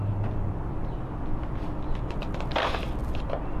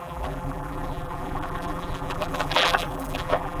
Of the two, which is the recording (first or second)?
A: first